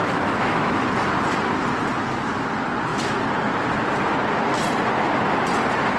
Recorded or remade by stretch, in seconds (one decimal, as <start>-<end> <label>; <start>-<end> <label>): 0.0-0.8 remade; 0.8-6.0 recorded